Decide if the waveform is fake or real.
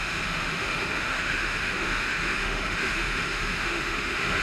fake